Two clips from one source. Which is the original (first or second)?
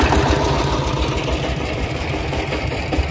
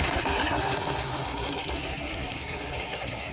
first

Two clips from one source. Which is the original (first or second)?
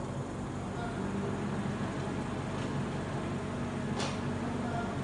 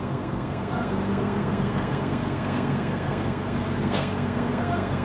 first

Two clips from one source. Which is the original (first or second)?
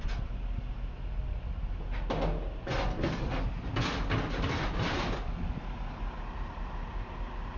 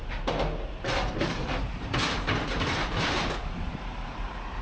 first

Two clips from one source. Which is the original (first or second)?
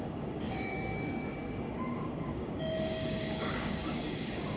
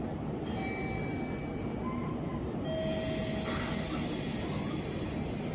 second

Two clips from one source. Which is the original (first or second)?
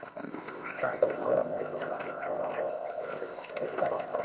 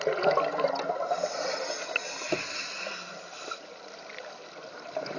second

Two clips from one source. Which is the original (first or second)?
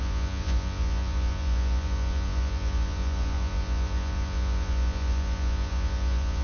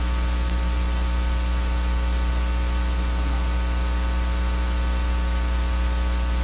second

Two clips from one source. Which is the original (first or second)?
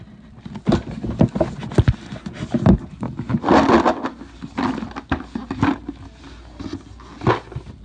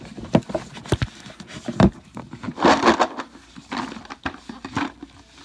first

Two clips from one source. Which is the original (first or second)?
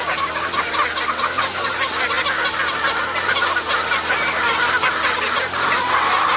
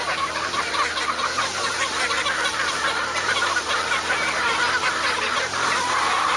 first